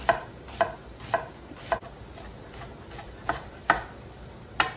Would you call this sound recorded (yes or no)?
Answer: yes